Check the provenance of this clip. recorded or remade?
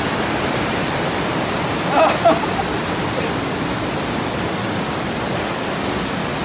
recorded